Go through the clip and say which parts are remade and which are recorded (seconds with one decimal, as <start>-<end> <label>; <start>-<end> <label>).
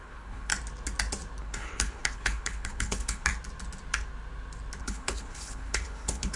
0.0-0.5 remade; 0.5-1.4 recorded; 1.4-3.3 remade; 3.3-4.8 recorded; 4.8-6.4 remade